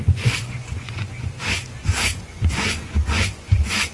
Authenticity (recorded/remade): remade